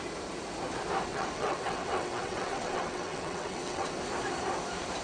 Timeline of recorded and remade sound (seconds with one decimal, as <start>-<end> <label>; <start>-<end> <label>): 0.0-1.1 recorded; 1.1-3.9 remade; 3.9-5.0 recorded